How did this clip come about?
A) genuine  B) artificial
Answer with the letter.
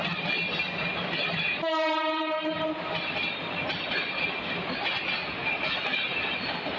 A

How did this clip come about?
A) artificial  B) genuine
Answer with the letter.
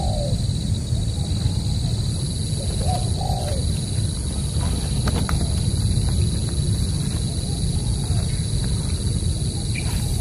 B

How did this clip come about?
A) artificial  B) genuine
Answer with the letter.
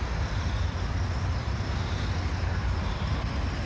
B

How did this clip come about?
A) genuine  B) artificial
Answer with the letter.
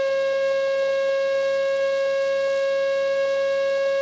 A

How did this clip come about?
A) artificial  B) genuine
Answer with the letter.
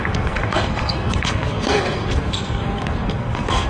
A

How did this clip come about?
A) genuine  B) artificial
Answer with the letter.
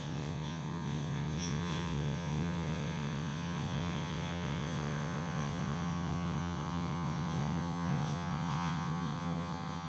B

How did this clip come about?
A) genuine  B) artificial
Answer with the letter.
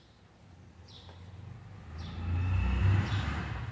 A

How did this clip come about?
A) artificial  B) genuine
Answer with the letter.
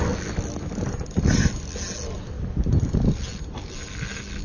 B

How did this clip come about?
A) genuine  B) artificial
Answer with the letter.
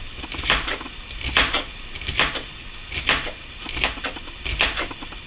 A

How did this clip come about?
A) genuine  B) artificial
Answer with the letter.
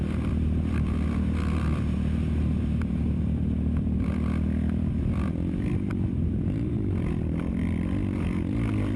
B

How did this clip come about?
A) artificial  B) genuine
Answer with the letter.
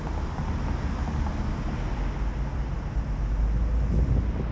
B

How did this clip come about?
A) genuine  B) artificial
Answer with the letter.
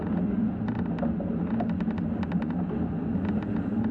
A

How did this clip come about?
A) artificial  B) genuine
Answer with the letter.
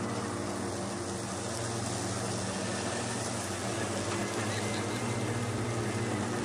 B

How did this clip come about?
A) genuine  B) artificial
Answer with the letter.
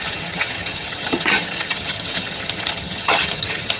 B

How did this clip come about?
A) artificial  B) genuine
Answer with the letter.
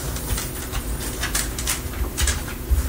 A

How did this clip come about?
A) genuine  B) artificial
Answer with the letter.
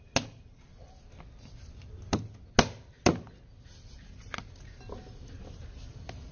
A